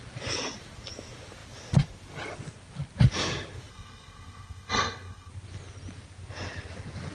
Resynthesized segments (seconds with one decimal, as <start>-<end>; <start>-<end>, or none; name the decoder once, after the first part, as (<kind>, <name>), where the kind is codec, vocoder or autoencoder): 3.7-5.3 (codec, SNAC)